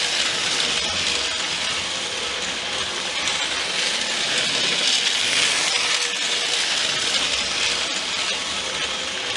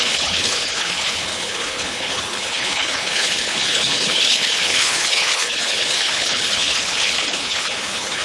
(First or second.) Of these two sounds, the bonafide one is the first